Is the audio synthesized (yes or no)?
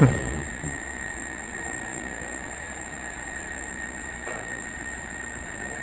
yes